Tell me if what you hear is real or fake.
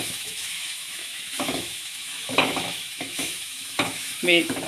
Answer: fake